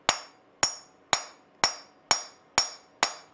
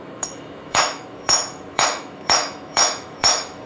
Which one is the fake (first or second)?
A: second